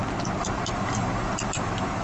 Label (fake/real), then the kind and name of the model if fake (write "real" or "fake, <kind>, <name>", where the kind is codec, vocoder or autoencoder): real